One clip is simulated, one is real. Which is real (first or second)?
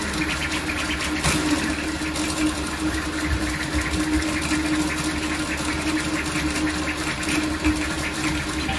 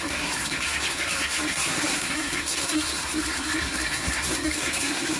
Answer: first